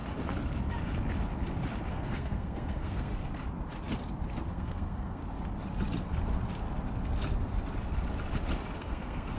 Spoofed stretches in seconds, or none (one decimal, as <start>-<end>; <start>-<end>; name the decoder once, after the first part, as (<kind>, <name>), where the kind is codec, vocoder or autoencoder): 1.9-3.1 (codec, SNAC); 4.5-5.2; 8.8-9.4